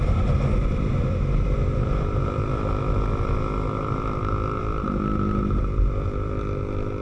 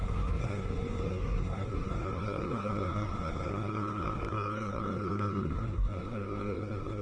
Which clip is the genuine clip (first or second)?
first